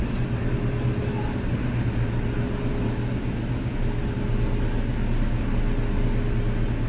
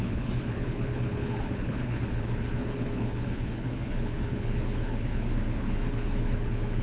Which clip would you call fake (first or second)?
second